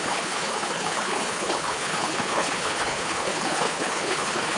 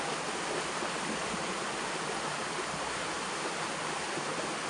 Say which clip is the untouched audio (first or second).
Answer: second